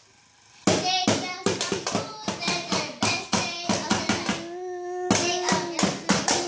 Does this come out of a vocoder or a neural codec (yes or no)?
no